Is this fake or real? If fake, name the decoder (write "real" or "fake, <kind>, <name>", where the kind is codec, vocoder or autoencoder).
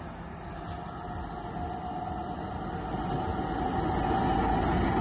real